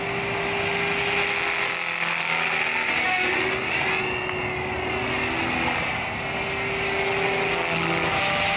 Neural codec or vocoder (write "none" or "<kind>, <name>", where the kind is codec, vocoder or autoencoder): none